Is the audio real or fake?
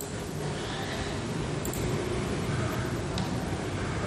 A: fake